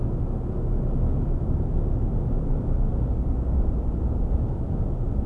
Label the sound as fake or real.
real